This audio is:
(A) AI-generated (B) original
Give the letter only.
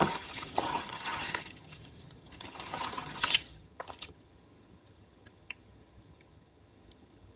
A